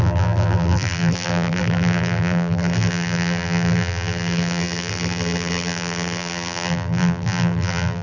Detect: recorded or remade remade